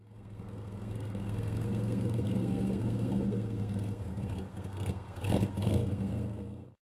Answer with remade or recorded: remade